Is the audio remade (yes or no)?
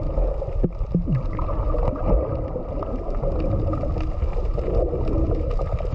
no